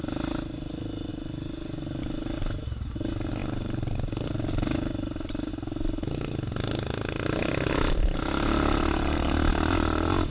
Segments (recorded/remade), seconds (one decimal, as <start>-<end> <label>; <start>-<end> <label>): 0.0-10.3 recorded